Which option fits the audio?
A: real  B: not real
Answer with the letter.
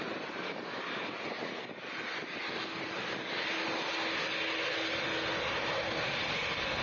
A